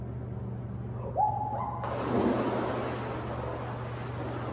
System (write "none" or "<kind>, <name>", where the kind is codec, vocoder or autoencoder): none